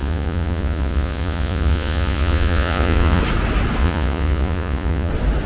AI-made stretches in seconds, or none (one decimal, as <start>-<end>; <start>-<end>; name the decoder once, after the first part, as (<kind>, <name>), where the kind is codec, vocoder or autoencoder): 0.0-3.2 (vocoder, Vocos); 3.8-5.1